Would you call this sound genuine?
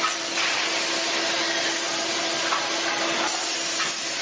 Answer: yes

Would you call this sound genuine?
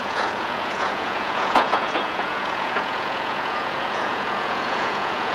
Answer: no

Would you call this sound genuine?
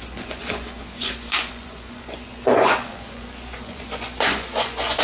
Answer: no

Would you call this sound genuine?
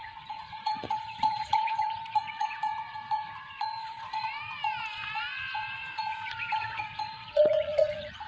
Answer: no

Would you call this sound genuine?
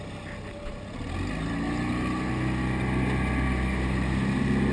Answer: yes